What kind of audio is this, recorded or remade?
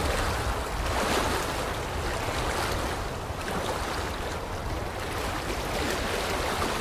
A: recorded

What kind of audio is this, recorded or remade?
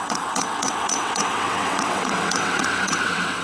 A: remade